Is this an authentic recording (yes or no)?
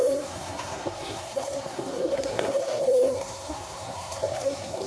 no